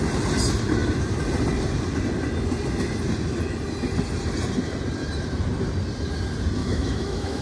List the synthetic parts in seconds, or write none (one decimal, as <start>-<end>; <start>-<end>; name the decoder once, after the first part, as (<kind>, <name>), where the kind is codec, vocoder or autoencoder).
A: 6.6-7.4 (autoencoder, DAC-VAE)